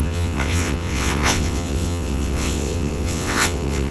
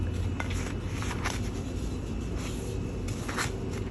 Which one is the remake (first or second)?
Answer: first